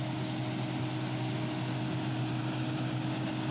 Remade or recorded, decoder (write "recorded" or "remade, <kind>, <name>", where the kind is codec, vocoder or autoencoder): recorded